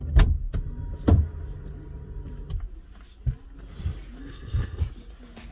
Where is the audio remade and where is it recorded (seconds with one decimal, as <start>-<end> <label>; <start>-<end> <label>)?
0.0-4.2 recorded; 4.2-4.8 remade; 4.8-5.5 recorded